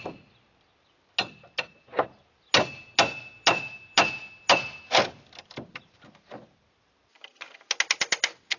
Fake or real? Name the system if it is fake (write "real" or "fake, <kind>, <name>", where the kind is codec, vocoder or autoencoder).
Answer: real